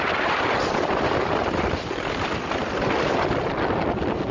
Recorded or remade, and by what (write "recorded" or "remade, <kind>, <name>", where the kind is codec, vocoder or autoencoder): recorded